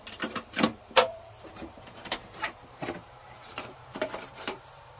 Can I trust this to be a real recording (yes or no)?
no